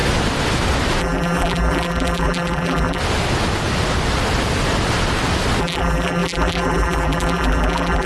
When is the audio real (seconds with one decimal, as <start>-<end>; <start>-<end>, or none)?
0.0-1.0; 3.0-5.6